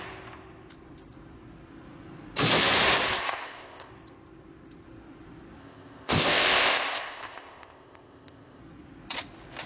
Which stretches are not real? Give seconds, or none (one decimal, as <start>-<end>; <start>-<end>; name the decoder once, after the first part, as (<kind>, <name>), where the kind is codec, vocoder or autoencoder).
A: 3.2-3.9 (codec, ZipCodec); 5.6-8.6